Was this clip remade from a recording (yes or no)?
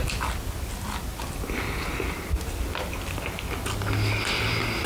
no